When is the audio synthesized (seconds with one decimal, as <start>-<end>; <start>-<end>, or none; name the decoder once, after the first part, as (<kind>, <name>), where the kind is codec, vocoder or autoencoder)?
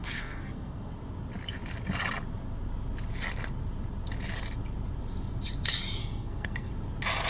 0.0-0.9 (codec, SNAC); 6.0-6.7